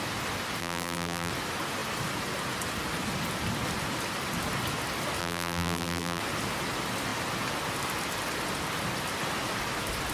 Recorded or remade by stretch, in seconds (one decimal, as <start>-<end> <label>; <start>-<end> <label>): 0.0-0.6 recorded; 0.6-1.3 remade; 1.3-5.2 recorded; 5.2-6.2 remade; 6.2-10.1 recorded